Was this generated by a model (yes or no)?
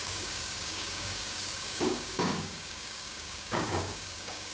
yes